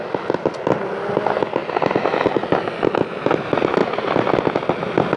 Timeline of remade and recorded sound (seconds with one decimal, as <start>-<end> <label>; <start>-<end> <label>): 0.0-5.2 recorded